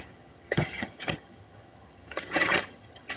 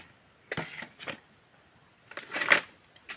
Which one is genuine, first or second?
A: second